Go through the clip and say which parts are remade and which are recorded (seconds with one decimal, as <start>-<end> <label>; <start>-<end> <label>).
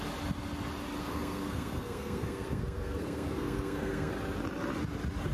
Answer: 0.0-1.0 recorded; 1.0-4.1 remade; 4.1-5.3 recorded